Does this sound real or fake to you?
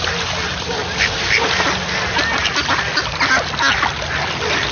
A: real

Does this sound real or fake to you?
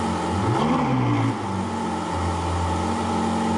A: real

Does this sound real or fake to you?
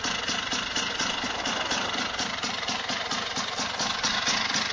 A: real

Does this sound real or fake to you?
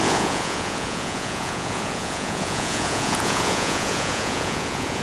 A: fake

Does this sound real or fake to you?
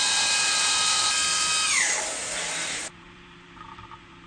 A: fake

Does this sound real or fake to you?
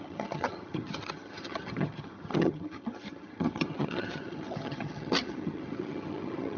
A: fake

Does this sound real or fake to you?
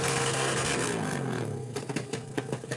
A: fake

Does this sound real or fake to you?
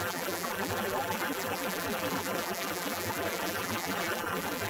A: fake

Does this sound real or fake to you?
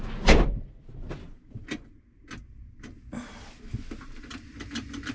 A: real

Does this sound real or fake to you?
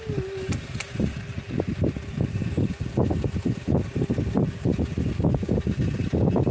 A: real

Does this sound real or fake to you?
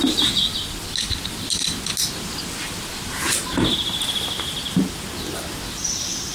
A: real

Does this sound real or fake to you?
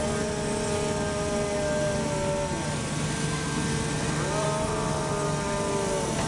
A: real